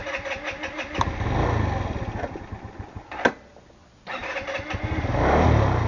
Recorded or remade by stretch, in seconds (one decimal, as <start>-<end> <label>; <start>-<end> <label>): 0.0-5.9 recorded